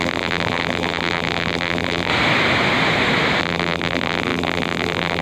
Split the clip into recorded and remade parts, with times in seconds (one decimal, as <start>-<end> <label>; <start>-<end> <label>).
0.0-2.1 remade; 2.1-3.4 recorded; 3.4-5.2 remade